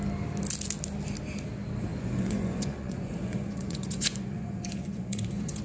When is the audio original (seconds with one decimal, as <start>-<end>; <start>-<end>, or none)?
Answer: 0.0-1.9